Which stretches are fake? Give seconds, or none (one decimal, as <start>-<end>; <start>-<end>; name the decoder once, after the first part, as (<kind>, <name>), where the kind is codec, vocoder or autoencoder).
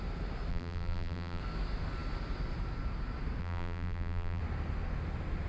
0.5-1.4 (vocoder, BigVGAN v2); 3.4-4.4